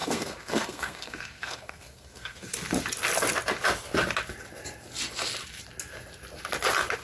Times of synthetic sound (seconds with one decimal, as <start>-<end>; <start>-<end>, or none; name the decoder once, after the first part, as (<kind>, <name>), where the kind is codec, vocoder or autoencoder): 0.0-2.5 (codec, SNAC)